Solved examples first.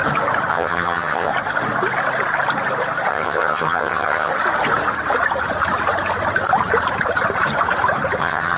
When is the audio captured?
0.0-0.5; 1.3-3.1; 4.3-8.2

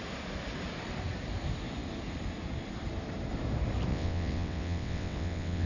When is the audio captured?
0.0-3.9